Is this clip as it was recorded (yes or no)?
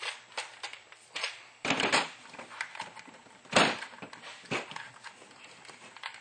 yes